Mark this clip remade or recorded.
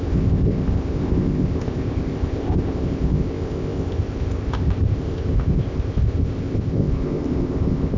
remade